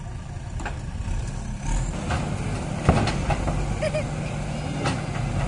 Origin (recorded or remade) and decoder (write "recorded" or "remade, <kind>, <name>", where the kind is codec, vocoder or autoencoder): recorded